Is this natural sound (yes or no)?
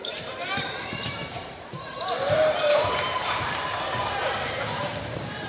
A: no